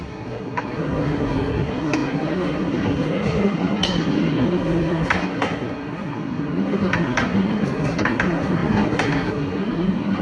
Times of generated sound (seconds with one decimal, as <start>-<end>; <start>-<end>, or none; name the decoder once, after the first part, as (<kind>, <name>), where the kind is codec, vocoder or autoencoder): 0.0-10.2 (codec, SNAC)